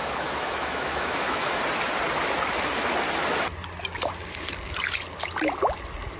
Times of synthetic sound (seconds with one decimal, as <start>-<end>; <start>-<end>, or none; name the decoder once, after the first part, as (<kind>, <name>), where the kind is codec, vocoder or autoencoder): 0.0-1.6 (autoencoder, DAC-VAE)